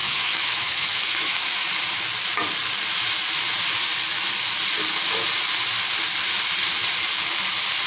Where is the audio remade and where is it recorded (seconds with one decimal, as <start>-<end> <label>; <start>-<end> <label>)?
0.0-1.7 remade; 1.7-7.9 recorded

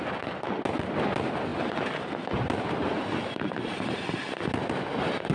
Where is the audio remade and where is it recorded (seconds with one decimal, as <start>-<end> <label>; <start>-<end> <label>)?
0.0-5.3 recorded

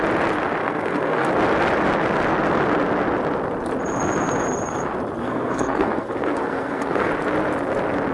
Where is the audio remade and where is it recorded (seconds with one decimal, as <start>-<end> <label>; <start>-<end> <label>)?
0.0-0.6 recorded; 0.6-1.3 remade; 1.3-5.2 recorded; 5.2-7.1 remade; 7.1-8.1 recorded

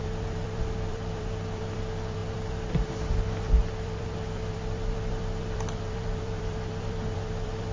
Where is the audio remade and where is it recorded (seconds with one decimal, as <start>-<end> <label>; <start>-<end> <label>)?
0.0-7.7 remade

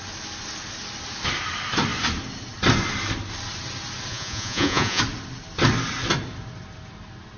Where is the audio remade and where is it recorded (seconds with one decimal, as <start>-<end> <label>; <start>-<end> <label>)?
0.0-4.1 recorded; 4.1-5.0 remade; 5.0-7.4 recorded

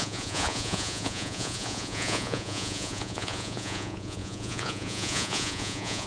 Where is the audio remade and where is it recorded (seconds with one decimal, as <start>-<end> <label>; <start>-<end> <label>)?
0.0-6.1 remade

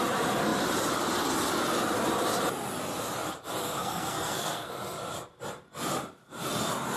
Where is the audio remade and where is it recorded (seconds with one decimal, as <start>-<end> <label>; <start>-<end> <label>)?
0.0-3.6 recorded; 3.6-4.7 remade; 4.7-7.0 recorded

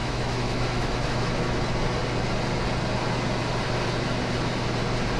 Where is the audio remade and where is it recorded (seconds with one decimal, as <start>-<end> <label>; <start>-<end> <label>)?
0.0-1.6 remade; 1.6-5.2 recorded